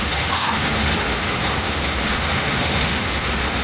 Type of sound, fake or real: fake